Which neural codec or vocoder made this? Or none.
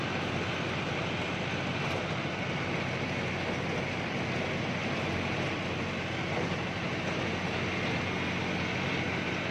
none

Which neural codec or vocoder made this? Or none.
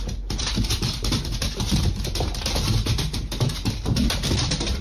vocoder, BigVGAN v2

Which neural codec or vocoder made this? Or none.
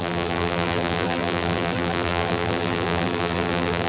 vocoder, BigVGAN v2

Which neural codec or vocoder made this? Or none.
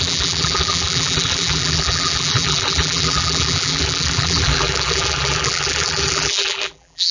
vocoder, BigVGAN v2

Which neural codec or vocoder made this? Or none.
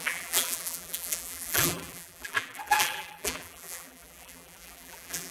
vocoder, BigVGAN v2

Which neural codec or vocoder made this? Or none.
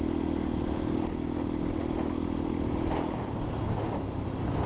none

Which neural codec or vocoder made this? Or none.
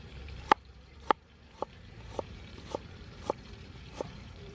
vocoder, BigVGAN v2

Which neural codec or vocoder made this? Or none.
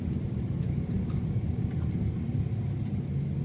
none